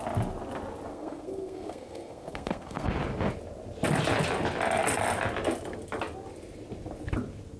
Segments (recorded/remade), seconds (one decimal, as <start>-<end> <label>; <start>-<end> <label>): 0.0-0.9 recorded; 0.9-2.9 remade; 2.9-7.6 recorded